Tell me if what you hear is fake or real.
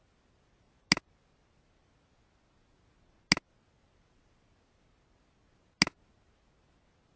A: real